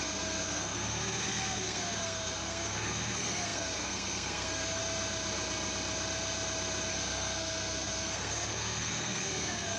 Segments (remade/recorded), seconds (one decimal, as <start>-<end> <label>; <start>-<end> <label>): 0.0-4.8 remade; 4.8-6.9 recorded; 6.9-9.8 remade